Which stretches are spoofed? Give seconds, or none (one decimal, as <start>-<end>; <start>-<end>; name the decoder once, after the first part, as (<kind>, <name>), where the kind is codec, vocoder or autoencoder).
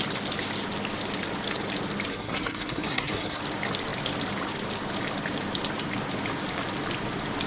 2.1-3.4 (codec, SNAC)